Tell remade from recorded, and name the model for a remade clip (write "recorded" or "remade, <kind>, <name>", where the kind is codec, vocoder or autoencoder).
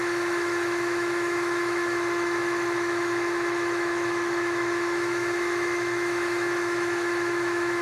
remade, autoencoder, DAC-VAE